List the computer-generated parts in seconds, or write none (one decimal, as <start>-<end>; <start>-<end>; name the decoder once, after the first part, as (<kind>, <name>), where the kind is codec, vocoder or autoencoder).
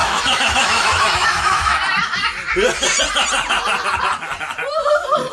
0.0-1.7 (autoencoder, DAC-VAE)